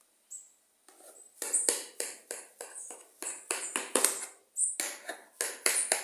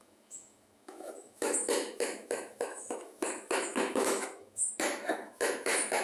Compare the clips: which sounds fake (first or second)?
second